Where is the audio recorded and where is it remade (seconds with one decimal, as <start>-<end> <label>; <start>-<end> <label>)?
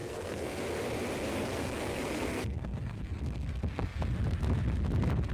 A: 0.0-0.6 remade; 0.6-1.3 recorded; 1.3-4.0 remade; 4.0-5.3 recorded